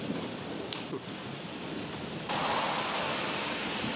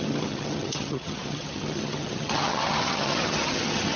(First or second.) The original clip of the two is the first